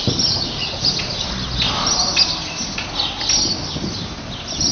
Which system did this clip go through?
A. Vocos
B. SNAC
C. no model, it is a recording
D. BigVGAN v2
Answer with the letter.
C